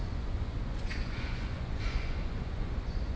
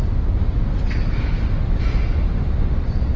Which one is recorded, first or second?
second